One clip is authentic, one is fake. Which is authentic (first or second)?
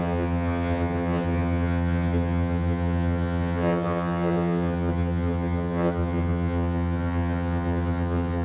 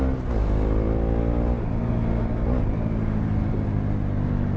second